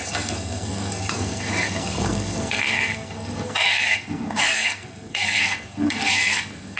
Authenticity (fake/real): fake